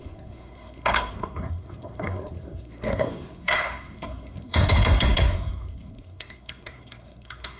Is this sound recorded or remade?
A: remade